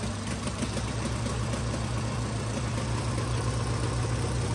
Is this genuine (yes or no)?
yes